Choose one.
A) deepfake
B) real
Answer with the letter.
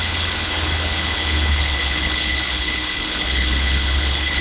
A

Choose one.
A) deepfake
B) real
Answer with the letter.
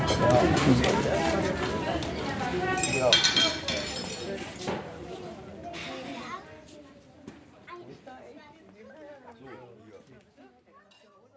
B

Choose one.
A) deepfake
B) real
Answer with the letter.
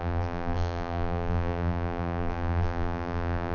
A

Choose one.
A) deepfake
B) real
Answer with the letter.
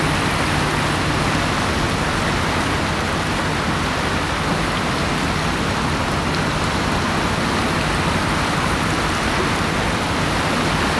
B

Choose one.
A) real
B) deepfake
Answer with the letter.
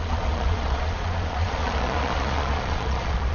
B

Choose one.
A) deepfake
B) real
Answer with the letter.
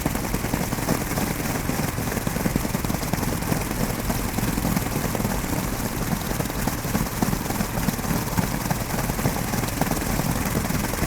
B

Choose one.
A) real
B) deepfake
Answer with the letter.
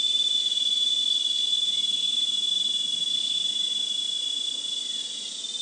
A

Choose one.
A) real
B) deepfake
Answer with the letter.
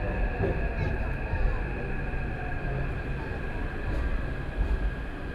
A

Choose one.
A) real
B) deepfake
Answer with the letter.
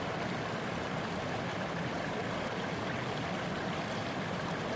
A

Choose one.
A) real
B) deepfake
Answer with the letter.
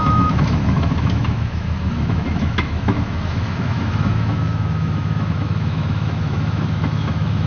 B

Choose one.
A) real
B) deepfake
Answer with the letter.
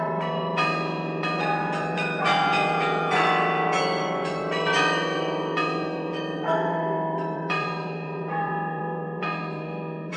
B